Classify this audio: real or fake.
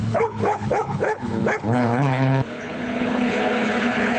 fake